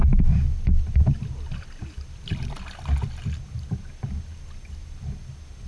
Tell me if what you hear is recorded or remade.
recorded